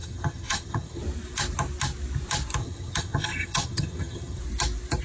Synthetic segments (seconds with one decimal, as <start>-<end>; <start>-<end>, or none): 0.0-1.0; 2.6-4.4